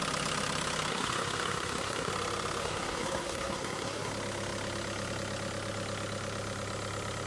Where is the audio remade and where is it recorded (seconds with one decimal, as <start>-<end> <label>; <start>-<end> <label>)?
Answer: 0.0-0.9 recorded; 0.9-2.1 remade; 2.1-2.6 recorded; 2.6-4.1 remade; 4.1-7.3 recorded